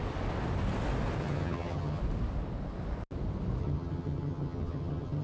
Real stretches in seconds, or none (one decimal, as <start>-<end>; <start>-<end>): 0.0-1.2; 2.0-3.6